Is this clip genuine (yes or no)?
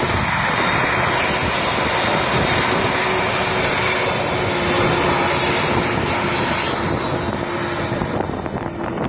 yes